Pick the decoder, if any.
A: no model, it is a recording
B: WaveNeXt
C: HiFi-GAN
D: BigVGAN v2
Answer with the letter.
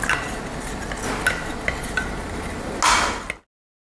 A